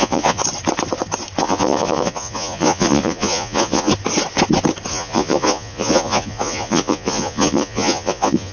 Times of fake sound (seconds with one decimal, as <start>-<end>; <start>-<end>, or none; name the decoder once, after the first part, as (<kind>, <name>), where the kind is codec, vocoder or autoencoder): 0.0-0.4 (vocoder, Vocos); 1.4-3.9; 4.9-8.5